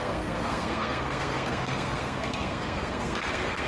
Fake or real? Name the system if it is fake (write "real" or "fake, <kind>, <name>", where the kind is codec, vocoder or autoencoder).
fake, codec, SNAC